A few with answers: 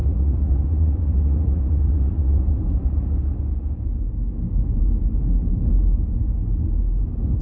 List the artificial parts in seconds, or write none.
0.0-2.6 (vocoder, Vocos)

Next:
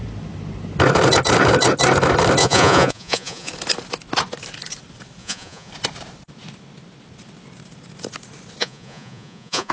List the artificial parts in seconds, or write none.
2.4-3.5 (vocoder, Vocos); 5.2-5.7; 8.6-9.7

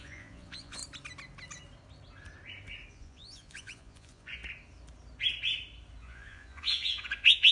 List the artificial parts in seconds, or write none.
0.0-0.8 (vocoder, Vocos); 2.9-4.4; 6.0-7.5

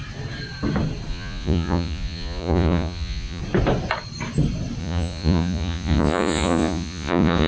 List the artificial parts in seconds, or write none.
1.1-3.4 (vocoder, Vocos); 4.8-7.5

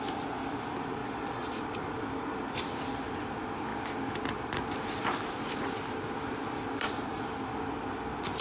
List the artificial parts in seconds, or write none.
1.0-1.6 (vocoder, Vocos)

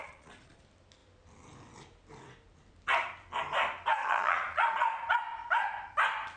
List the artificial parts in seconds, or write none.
0.0-0.6 (vocoder, Vocos); 4.0-5.1

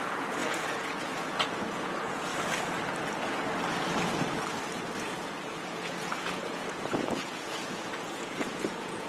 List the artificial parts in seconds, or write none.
0.0-2.3 (vocoder, Vocos); 5.0-9.1